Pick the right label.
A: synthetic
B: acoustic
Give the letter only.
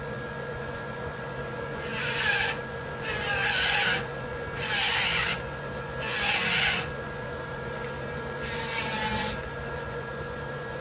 A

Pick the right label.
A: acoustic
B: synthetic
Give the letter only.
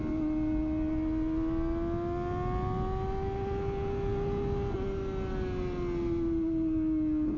A